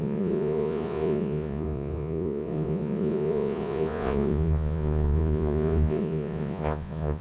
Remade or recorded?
remade